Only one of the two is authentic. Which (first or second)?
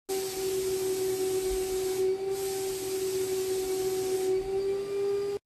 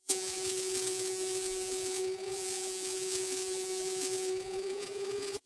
first